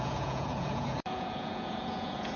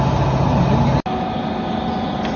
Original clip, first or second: second